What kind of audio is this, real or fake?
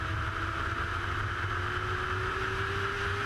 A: real